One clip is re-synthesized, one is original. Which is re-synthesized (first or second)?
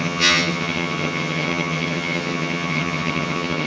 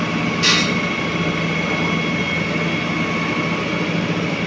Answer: first